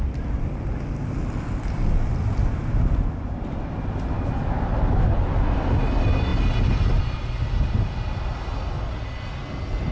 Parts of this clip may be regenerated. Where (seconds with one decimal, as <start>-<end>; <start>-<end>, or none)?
none